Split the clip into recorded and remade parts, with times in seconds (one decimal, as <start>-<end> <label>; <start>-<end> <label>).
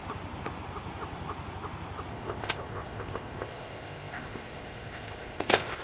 0.0-2.1 recorded; 2.1-5.8 remade